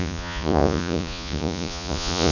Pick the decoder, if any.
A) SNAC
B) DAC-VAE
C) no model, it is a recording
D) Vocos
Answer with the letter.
D